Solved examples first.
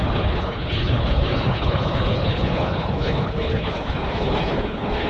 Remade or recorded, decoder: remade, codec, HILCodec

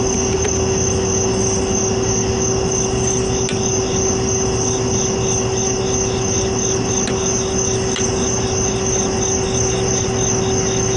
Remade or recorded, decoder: recorded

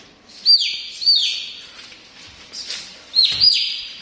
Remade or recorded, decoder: recorded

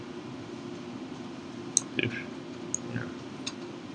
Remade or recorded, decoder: recorded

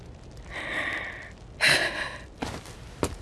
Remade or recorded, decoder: recorded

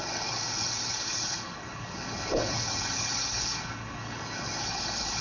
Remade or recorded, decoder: remade, codec, HILCodec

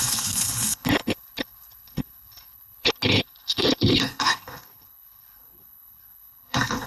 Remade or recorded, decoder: remade, codec, HILCodec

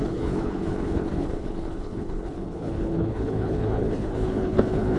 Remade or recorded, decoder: remade, codec, HILCodec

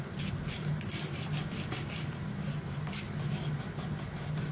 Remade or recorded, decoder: recorded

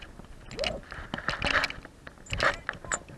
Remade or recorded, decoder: recorded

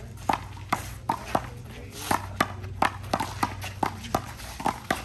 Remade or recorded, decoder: recorded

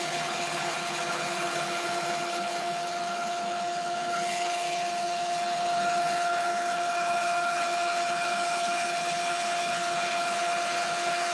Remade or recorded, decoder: remade, codec, HILCodec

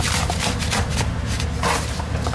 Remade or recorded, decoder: recorded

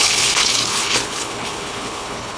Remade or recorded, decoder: remade, codec, HILCodec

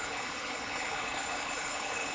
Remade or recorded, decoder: remade, codec, HILCodec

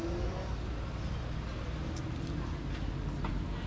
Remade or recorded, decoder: recorded